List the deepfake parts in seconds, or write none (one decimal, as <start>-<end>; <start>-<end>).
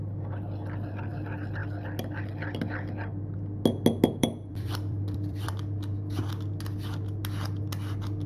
4.2-5.5